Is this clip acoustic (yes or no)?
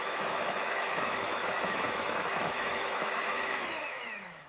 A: no